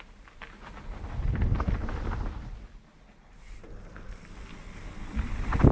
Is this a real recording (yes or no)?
yes